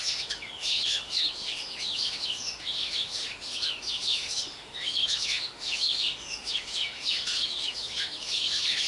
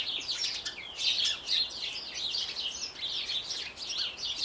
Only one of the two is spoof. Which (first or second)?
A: first